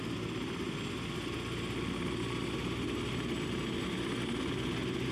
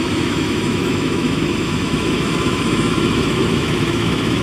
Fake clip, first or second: second